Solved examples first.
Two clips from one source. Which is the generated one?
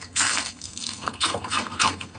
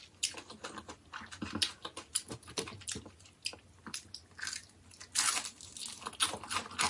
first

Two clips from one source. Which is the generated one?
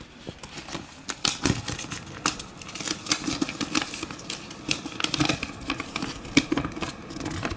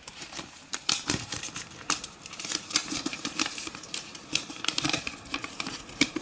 second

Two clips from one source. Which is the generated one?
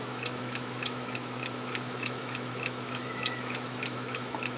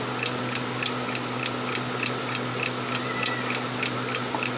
first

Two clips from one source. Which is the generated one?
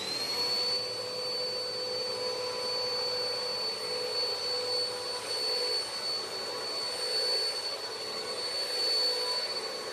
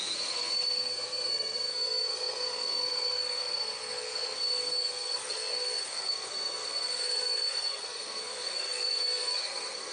second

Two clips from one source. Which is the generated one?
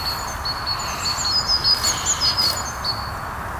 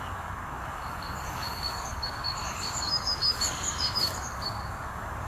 second